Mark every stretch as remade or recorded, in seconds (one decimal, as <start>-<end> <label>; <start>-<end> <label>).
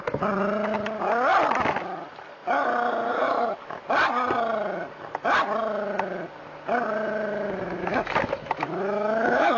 0.0-7.8 recorded; 7.8-9.6 remade